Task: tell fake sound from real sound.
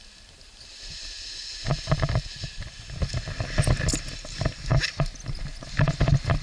real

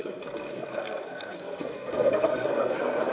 fake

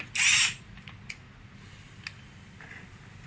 real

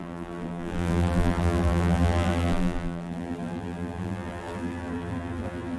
fake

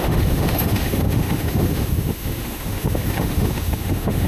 fake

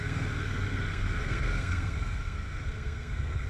fake